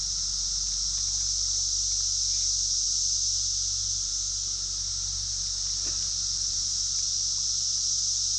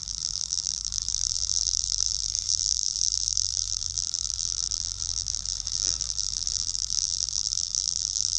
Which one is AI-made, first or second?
second